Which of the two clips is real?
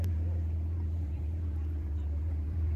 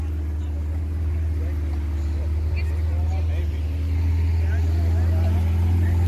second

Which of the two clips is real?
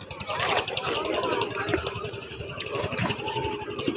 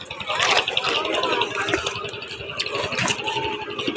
second